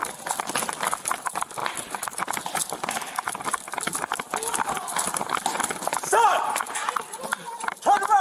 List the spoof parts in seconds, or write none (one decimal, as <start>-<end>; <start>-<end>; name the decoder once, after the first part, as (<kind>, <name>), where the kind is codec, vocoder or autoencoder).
none